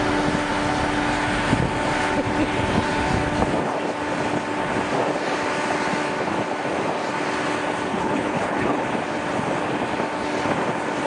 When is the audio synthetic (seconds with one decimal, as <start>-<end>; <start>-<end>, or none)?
7.9-8.9